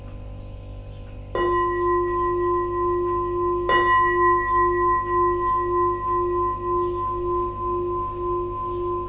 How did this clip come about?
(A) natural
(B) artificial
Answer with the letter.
A